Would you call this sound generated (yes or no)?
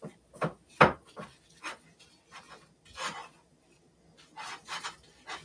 no